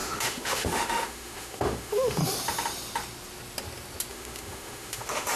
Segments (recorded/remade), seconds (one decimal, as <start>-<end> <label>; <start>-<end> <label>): 0.0-2.2 remade; 2.2-4.1 recorded; 4.1-5.4 remade